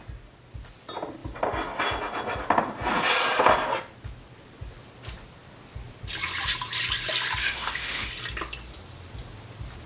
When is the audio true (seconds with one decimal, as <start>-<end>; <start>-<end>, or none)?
0.0-7.4; 8.1-9.9

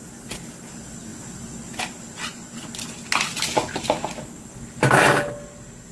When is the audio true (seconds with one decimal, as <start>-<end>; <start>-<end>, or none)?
0.0-5.9